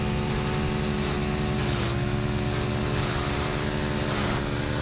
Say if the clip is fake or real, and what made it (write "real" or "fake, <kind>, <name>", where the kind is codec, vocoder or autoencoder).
real